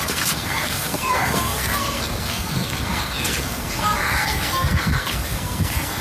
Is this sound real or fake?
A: fake